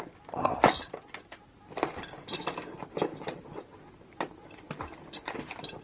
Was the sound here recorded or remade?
recorded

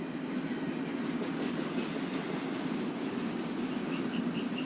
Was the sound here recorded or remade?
recorded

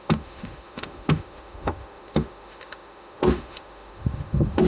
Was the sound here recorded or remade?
remade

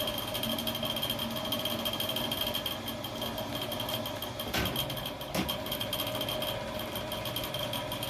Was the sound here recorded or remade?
recorded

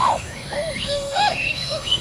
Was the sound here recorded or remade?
remade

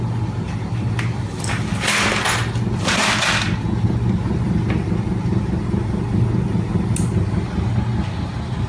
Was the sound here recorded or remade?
recorded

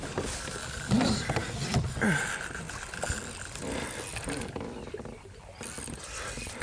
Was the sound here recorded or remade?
recorded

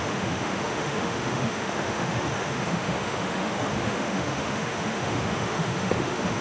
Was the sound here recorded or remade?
remade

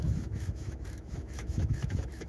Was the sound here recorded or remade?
remade